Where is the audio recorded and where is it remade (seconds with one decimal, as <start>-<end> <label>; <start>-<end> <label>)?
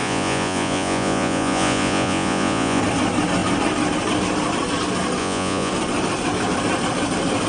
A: 0.0-2.8 remade; 2.8-5.2 recorded; 5.2-5.7 remade; 5.7-7.5 recorded